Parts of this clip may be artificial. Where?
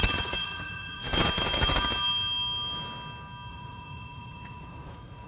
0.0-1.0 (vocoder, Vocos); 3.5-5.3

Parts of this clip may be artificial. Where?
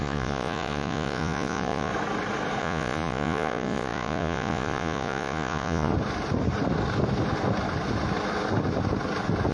0.0-1.9 (vocoder, Vocos); 2.6-5.9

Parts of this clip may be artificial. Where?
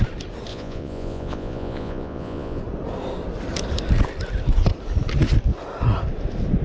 0.5-2.6 (vocoder, Vocos)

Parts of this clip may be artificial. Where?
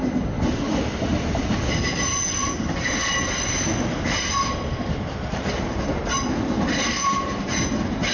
none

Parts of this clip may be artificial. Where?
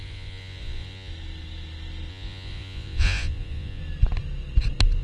0.0-1.1 (vocoder, Vocos); 2.1-3.8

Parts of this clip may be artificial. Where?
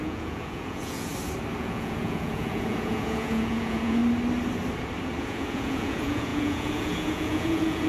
0.0-1.1 (vocoder, Vocos); 1.6-4.0; 5.2-7.9